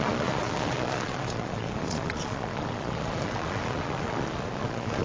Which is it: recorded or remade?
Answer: remade